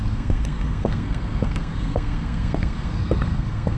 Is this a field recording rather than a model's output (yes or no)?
no